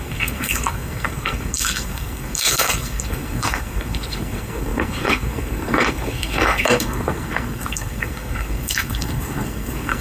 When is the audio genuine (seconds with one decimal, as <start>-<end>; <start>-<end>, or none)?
none